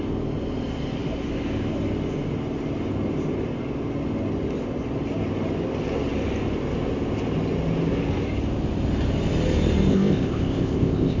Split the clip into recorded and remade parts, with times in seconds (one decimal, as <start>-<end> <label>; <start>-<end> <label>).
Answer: 0.0-9.9 recorded; 9.9-11.2 remade

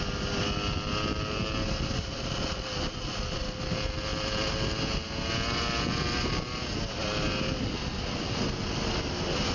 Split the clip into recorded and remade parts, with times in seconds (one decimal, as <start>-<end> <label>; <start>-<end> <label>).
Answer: 0.0-9.5 recorded

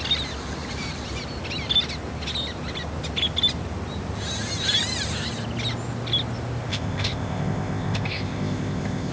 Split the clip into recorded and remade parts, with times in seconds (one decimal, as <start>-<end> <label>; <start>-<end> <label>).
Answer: 0.0-6.7 recorded; 6.7-9.1 remade

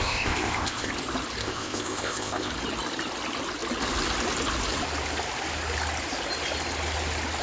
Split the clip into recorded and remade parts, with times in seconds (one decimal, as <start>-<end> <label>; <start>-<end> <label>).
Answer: 0.0-0.9 remade; 0.9-1.4 recorded; 1.4-2.5 remade; 2.5-7.4 recorded

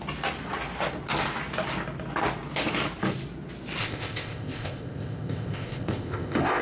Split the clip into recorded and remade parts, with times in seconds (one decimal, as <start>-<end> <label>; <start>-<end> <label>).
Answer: 0.0-3.8 recorded; 3.8-6.6 remade

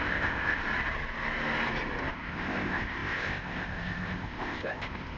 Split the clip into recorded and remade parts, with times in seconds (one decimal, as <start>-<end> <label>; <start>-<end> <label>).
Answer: 0.0-0.6 remade; 0.6-2.1 recorded; 2.1-5.2 remade

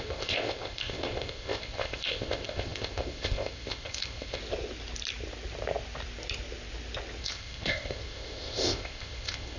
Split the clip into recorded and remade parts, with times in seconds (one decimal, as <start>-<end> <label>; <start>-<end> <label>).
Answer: 0.0-4.4 remade; 4.4-7.2 recorded; 7.2-9.6 remade

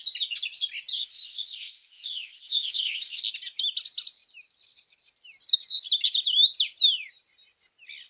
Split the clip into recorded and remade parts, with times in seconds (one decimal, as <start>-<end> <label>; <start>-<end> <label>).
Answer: 0.0-1.0 recorded; 1.0-3.2 remade; 3.2-8.1 recorded